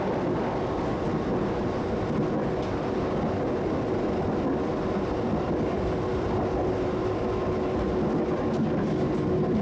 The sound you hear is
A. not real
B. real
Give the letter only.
B